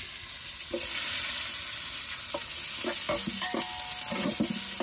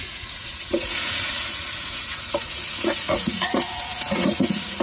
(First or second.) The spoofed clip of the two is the second